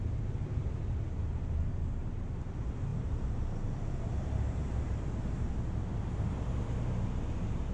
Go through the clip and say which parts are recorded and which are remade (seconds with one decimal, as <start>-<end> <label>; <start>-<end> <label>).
0.0-0.6 remade; 0.6-2.9 recorded; 2.9-5.5 remade; 5.5-7.7 recorded